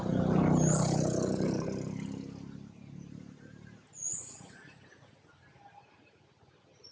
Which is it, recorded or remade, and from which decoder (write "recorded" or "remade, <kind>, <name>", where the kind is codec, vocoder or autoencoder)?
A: recorded